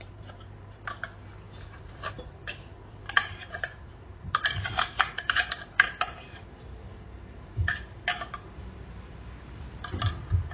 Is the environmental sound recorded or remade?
remade